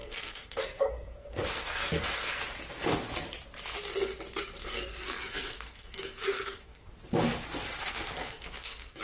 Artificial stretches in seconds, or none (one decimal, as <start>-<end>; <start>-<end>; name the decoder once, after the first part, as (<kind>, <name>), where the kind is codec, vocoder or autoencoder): 0.0-2.4 (codec, SNAC); 4.6-6.9; 7.8-9.0

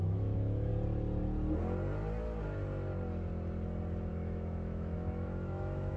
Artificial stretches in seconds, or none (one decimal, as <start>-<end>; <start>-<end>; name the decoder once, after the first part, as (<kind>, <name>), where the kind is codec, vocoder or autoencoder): 0.0-0.7 (autoencoder, DAC-VAE); 4.1-6.0

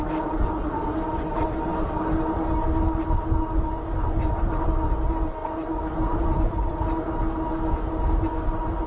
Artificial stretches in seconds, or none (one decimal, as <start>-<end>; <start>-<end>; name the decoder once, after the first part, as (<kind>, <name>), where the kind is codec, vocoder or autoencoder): none

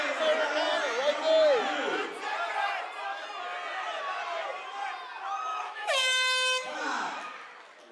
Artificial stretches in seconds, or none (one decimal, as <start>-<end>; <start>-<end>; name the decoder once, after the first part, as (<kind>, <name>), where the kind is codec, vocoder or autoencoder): 5.5-6.8 (autoencoder, DAC-VAE)

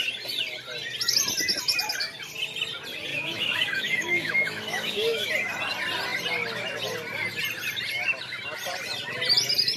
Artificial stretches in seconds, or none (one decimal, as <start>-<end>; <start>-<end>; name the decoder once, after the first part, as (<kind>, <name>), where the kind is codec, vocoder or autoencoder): 3.1-5.3 (autoencoder, DAC-VAE)

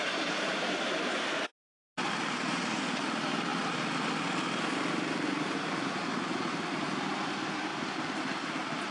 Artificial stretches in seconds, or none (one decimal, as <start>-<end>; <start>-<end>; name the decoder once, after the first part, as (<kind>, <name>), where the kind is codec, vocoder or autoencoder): none

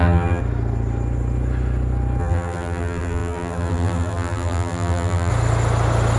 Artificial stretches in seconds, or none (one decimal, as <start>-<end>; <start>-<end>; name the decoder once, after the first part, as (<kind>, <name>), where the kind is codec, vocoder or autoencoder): 0.0-0.4 (vocoder, BigVGAN v2); 2.2-5.3

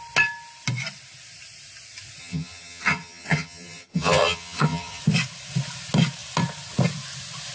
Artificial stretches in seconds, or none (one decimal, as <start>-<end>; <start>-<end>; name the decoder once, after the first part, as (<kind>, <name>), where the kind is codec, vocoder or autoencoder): 2.2-5.0 (vocoder, HiFi-GAN)